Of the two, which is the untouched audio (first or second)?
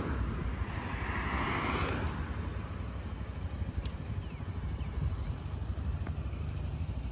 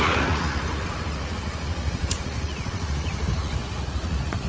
first